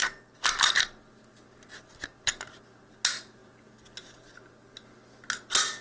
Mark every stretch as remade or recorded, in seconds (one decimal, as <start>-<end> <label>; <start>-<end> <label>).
0.0-5.8 recorded